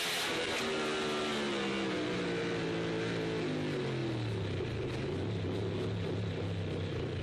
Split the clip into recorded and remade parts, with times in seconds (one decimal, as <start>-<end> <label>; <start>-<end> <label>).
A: 0.0-7.2 recorded